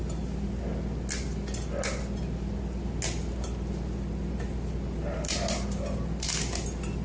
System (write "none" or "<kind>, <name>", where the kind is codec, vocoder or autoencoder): none